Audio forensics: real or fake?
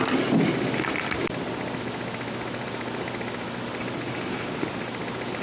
real